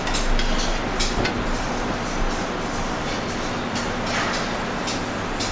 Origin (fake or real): real